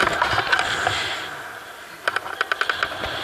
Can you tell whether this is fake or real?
real